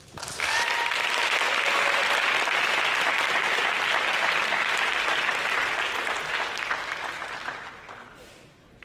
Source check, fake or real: real